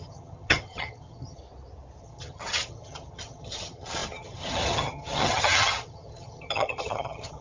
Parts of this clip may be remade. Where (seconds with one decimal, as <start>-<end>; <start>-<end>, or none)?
0.0-1.4; 2.0-7.4